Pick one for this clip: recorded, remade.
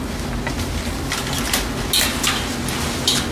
recorded